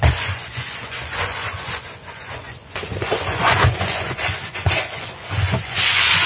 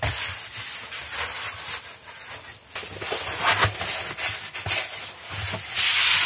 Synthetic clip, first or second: first